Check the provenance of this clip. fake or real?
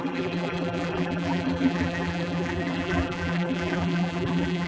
fake